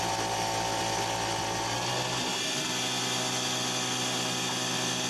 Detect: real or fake real